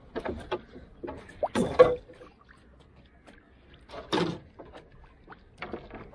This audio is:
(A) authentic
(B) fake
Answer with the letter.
A